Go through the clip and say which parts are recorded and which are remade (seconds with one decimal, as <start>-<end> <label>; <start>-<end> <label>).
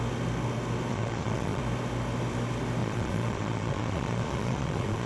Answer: 0.0-0.9 recorded; 0.9-1.6 remade; 1.6-2.8 recorded; 2.8-5.1 remade